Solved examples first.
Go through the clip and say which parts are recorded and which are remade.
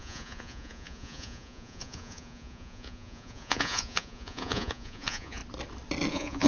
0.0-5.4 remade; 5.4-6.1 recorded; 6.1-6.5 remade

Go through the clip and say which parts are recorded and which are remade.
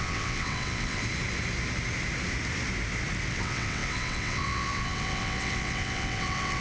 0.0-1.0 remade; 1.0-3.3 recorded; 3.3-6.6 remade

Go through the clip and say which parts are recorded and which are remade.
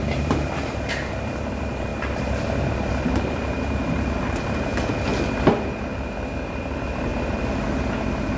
0.0-1.9 remade; 1.9-2.9 recorded; 2.9-4.7 remade; 4.7-6.6 recorded; 6.6-7.1 remade; 7.1-8.4 recorded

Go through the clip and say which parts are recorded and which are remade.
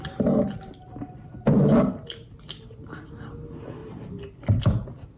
0.0-5.2 recorded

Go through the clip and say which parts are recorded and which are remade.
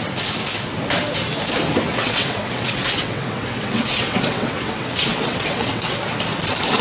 0.0-1.9 recorded; 1.9-6.0 remade; 6.0-6.8 recorded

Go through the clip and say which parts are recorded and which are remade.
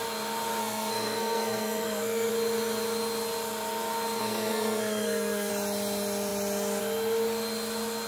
0.0-0.6 recorded; 0.6-2.3 remade; 2.3-4.2 recorded; 4.2-5.5 remade; 5.5-8.1 recorded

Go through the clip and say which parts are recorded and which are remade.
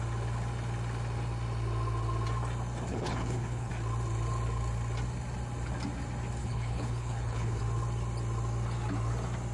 0.0-2.9 recorded; 2.9-3.7 remade; 3.7-6.4 recorded; 6.4-7.6 remade; 7.6-9.5 recorded